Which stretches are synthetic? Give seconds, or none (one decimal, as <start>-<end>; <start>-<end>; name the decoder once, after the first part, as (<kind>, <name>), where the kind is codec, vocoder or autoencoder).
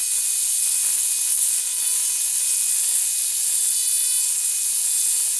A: 1.3-1.8 (vocoder, WaveNeXt)